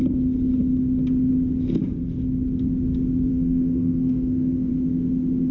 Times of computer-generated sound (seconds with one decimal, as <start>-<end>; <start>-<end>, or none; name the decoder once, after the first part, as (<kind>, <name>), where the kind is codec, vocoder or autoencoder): 3.3-4.7 (codec, SNAC)